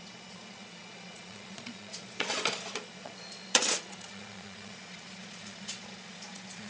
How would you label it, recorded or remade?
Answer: remade